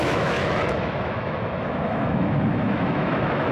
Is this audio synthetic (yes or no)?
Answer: yes